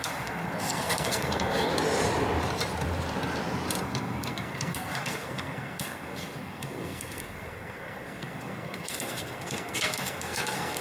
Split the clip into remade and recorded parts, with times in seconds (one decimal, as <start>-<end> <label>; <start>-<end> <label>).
0.0-1.7 remade; 1.7-3.8 recorded; 3.8-10.8 remade